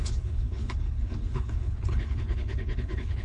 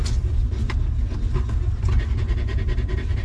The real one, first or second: second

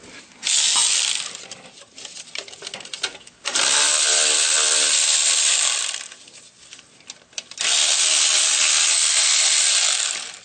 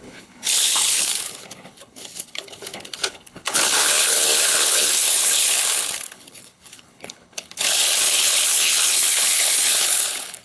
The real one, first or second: first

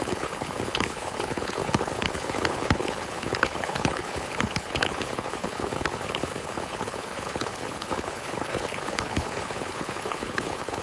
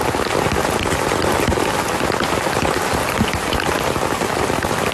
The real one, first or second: second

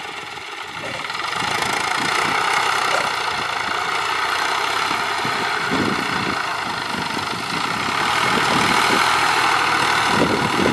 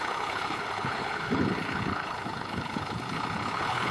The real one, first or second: first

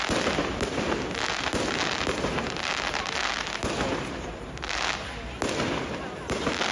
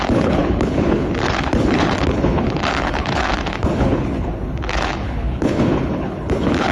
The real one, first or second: first